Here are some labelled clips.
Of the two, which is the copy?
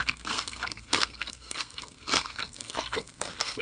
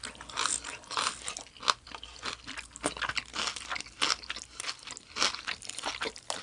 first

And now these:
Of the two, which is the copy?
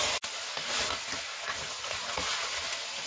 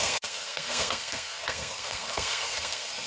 second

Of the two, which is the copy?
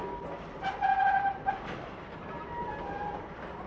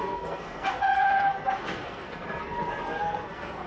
second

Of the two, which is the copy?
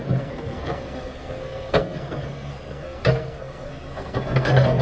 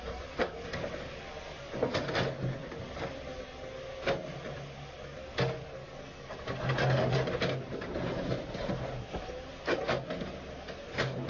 first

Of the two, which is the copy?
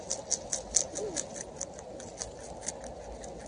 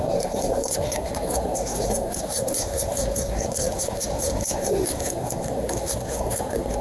second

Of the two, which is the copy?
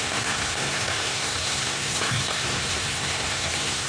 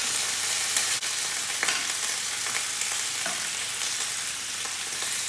first